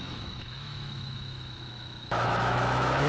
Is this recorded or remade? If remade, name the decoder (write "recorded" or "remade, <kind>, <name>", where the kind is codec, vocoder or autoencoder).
remade, autoencoder, DAC-VAE